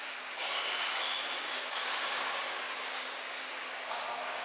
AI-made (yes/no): yes